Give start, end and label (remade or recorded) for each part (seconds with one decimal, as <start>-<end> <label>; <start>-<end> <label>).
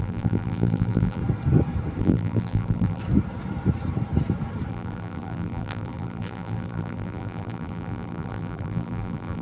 0.0-1.2 remade; 1.2-2.0 recorded; 2.0-3.0 remade; 3.0-4.7 recorded; 4.7-9.4 remade